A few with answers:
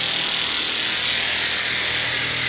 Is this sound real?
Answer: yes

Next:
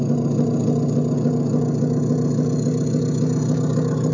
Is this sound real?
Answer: yes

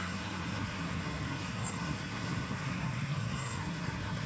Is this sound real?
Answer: no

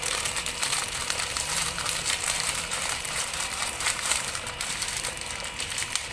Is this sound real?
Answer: no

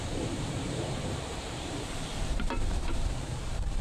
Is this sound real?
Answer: no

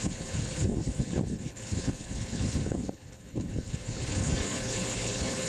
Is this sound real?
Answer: no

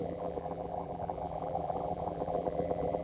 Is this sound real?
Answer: no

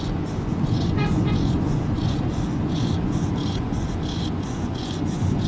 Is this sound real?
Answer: no